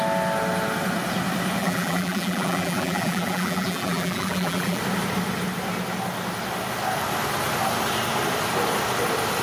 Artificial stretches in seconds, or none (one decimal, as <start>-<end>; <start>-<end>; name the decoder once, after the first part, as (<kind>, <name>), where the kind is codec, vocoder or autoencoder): 1.6-4.8 (vocoder, BigVGAN v2)